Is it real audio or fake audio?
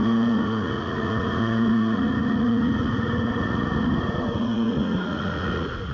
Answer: fake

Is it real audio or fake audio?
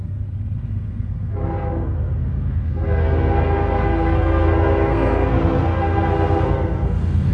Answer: fake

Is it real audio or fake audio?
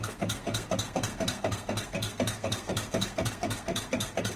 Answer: fake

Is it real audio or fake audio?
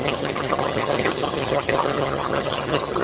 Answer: fake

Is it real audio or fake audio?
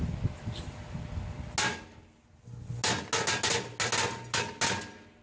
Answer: real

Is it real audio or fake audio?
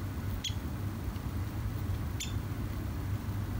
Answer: real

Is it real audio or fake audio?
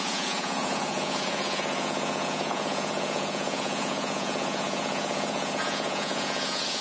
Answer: fake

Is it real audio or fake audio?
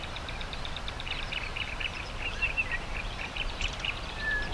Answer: fake